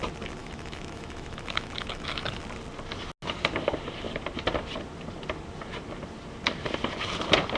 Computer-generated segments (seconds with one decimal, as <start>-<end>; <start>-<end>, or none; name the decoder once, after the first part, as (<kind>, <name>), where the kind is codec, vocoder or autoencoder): 0.4-2.3 (autoencoder, DAC-VAE)